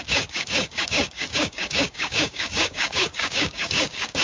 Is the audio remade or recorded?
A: remade